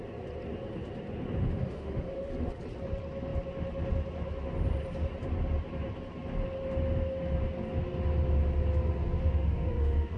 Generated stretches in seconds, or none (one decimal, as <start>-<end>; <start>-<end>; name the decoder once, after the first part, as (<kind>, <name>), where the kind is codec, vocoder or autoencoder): 1.4-2.3 (autoencoder, DAC-VAE); 9.2-10.2